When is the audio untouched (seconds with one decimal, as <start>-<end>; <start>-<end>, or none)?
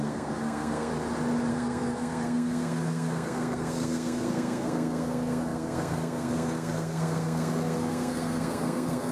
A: 0.9-1.5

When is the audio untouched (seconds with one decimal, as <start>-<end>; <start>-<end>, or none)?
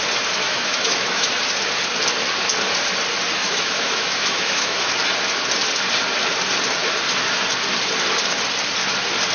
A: 0.0-0.4; 1.4-3.4; 4.9-9.3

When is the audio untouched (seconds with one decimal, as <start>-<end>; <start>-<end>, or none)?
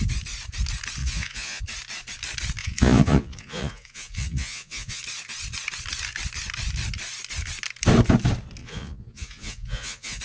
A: 0.0-1.0; 1.6-2.6; 5.0-8.6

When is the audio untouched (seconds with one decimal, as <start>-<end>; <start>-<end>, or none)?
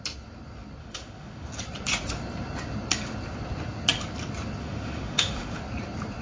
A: 0.0-0.8; 1.5-4.6; 5.6-6.2